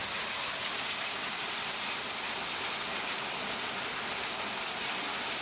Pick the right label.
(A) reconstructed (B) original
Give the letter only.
B